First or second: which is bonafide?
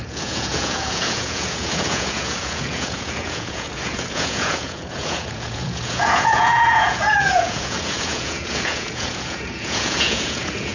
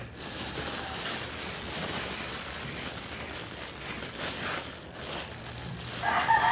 second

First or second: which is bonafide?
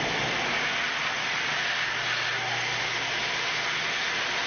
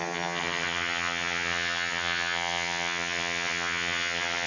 first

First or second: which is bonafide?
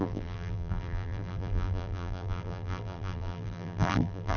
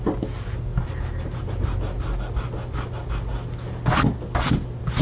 second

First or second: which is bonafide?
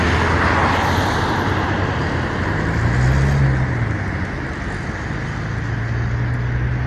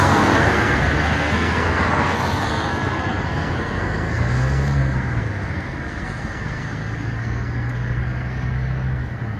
first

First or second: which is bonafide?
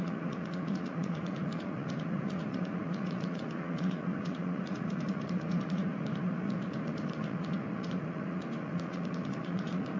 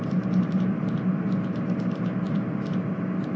second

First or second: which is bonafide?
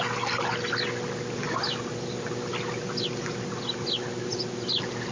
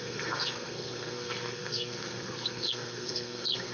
first